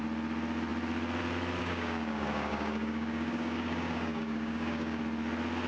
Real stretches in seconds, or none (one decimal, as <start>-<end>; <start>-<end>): 0.0-1.6; 5.0-5.7

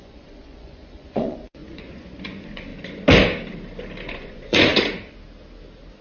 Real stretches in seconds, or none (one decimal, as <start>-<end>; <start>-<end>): 2.7-4.1; 4.7-6.0

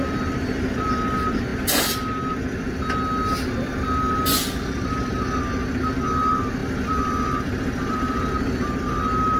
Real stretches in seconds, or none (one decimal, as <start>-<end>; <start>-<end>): 0.9-6.6; 8.3-9.4

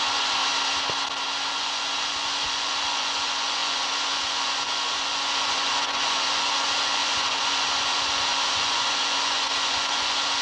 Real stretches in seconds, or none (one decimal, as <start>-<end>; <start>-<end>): 0.4-1.5